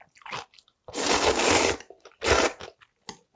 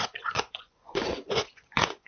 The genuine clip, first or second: first